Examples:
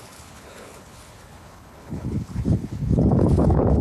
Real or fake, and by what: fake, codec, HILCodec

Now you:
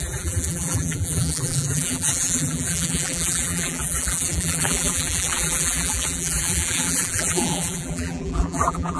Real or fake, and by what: fake, vocoder, BigVGAN v2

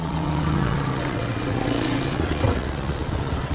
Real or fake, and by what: fake, vocoder, WaveNeXt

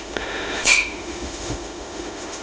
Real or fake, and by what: fake, autoencoder, DAC-VAE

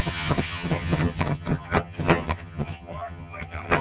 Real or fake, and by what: fake, vocoder, HiFi-GAN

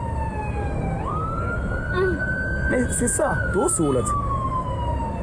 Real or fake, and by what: real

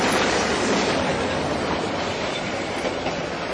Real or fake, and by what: real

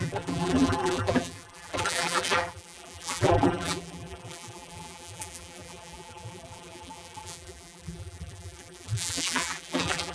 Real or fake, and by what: fake, vocoder, BigVGAN v2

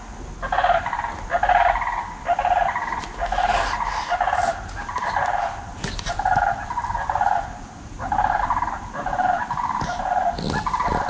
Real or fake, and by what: real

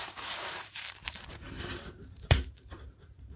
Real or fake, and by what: fake, vocoder, BigVGAN v2